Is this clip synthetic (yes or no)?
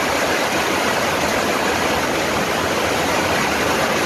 no